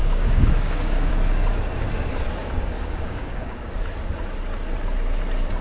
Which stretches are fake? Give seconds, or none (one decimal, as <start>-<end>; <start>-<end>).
0.0-1.1; 2.4-3.8